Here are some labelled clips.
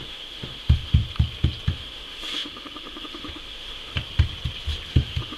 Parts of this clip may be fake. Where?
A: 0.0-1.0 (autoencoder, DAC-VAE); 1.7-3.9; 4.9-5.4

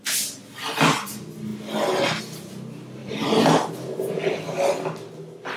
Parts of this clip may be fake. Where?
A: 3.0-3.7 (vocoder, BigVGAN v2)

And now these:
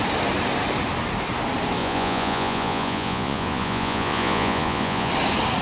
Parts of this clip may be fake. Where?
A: 1.8-5.1 (vocoder, Vocos)

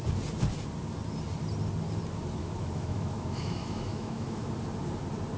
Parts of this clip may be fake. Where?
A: 2.4-4.5 (autoencoder, DAC-VAE)

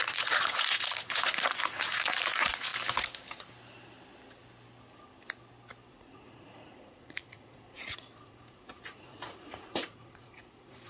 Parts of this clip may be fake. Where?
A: 0.0-2.7 (vocoder, Vocos); 5.9-10.9

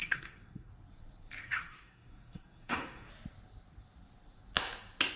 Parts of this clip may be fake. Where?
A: 0.0-0.7 (codec, SNAC); 1.4-3.1

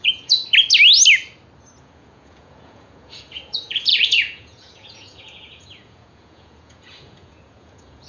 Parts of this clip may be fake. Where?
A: 0.0-0.4 (vocoder, Vocos); 1.8-8.1

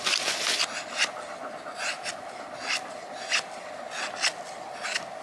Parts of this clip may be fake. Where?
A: none